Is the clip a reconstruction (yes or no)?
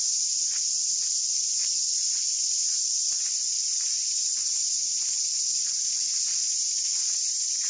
no